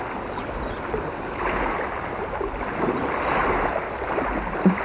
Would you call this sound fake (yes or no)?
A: no